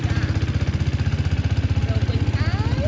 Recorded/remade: recorded